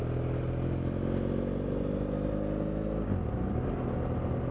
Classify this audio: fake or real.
real